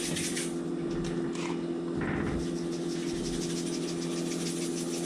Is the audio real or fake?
real